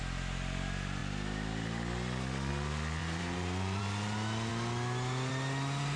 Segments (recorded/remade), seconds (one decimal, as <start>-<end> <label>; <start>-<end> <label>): 0.0-3.0 recorded; 3.0-3.8 remade; 3.8-6.0 recorded